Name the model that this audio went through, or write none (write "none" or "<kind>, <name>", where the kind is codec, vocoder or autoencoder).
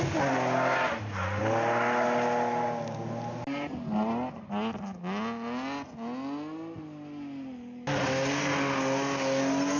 none